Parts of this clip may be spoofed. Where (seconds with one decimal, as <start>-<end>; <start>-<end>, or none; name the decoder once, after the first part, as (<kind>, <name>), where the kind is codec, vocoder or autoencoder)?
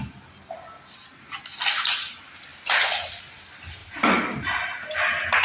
none